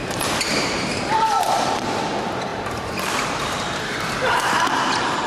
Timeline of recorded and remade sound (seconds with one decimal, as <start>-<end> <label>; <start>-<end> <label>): 0.0-1.5 remade; 1.5-2.5 recorded; 2.5-5.3 remade